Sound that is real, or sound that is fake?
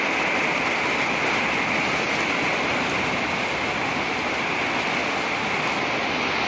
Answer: real